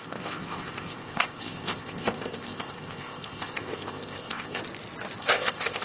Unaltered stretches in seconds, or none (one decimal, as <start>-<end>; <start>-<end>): 4.6-5.2